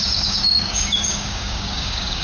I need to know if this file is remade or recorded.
remade